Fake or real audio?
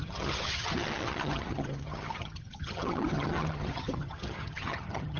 fake